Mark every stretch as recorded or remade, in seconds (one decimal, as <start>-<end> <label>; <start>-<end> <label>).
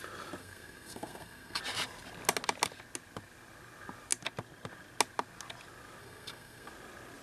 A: 0.0-0.4 recorded; 0.4-1.6 remade; 1.6-6.0 recorded; 6.0-6.7 remade; 6.7-7.2 recorded